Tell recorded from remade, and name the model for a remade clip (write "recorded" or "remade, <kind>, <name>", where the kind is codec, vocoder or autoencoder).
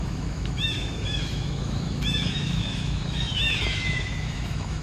remade, autoencoder, DAC-VAE